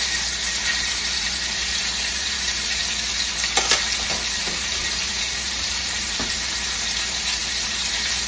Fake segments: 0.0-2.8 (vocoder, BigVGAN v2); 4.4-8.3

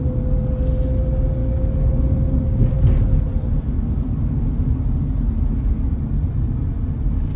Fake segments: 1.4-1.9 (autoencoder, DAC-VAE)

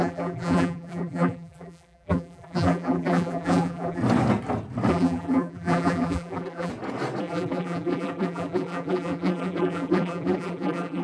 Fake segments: 0.0-4.0 (vocoder, BigVGAN v2); 4.9-6.7; 7.2-11.0

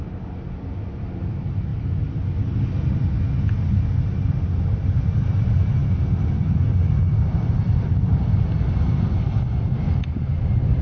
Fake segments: none

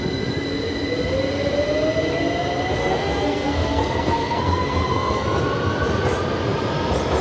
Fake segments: 2.8-5.4 (codec, SNAC)